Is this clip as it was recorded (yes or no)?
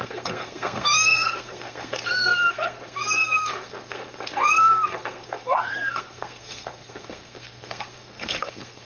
no